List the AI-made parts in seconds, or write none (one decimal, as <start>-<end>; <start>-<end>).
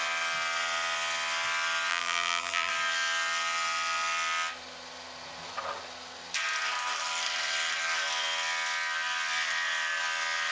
1.9-2.7